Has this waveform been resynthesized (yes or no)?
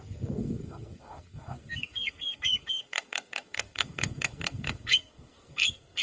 yes